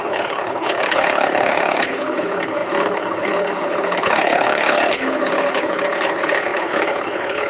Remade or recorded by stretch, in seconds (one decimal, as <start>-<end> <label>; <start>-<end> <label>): 0.0-7.5 remade